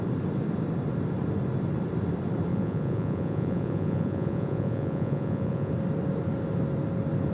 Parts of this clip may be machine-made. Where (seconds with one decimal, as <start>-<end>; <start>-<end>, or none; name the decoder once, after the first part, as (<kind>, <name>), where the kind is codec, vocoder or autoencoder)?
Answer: 2.5-5.7 (vocoder, Vocos)